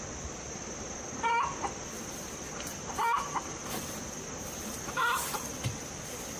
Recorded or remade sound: recorded